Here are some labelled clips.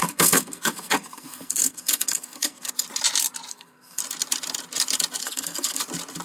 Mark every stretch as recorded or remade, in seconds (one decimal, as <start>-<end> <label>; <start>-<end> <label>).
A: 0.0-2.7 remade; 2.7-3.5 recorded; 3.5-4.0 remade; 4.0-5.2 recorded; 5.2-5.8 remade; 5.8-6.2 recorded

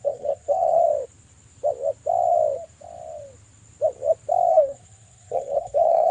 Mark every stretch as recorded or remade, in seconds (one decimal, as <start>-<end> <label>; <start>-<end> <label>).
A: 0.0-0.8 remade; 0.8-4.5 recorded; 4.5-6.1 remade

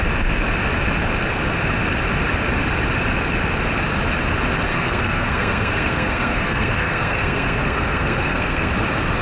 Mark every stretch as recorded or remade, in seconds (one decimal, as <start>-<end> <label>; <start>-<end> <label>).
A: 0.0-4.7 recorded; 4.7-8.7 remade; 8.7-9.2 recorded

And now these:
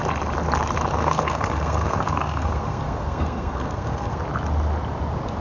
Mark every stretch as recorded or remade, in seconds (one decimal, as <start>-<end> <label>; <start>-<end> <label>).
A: 0.0-1.0 recorded; 1.0-4.2 remade; 4.2-5.4 recorded

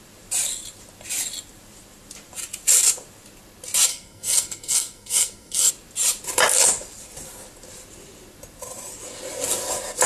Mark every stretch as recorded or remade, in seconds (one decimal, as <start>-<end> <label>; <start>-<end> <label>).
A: 0.0-3.9 recorded; 3.9-5.7 remade; 5.7-10.1 recorded

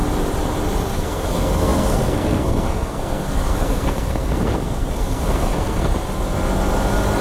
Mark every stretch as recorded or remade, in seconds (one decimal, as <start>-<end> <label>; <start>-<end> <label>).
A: 0.0-0.9 recorded; 0.9-5.9 remade; 5.9-7.2 recorded

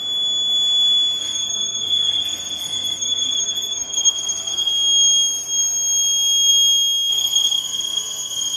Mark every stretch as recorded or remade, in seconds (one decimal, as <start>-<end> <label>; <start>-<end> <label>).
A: 0.0-1.2 recorded; 1.2-4.7 remade; 4.7-7.1 recorded; 7.1-8.6 remade